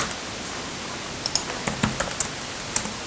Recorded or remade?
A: recorded